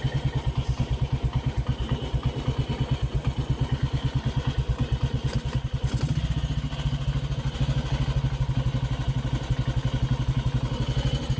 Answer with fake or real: real